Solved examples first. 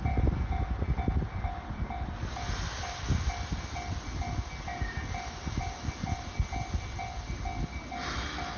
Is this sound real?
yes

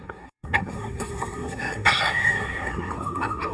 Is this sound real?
no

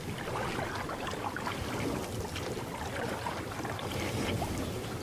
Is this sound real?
yes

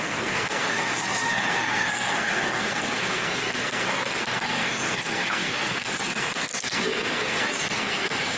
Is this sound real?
no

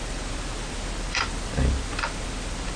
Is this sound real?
yes